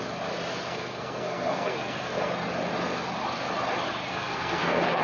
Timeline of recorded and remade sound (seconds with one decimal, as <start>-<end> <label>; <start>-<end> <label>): 0.0-0.5 recorded; 0.5-2.3 remade; 2.3-4.1 recorded; 4.1-5.0 remade